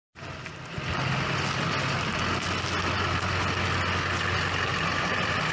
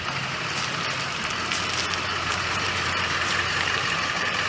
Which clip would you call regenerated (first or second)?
second